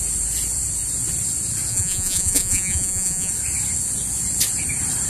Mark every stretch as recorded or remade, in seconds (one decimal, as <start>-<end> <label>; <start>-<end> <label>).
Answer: 0.0-1.7 recorded; 1.7-3.3 remade; 3.3-5.1 recorded